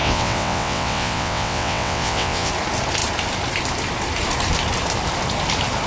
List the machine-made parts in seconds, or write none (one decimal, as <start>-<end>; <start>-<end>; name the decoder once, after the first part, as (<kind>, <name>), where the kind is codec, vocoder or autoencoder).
0.0-2.5 (vocoder, WaveNeXt)